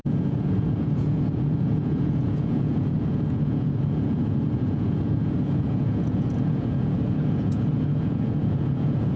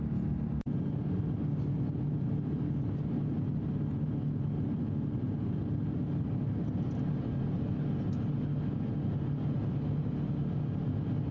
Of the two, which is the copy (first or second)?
first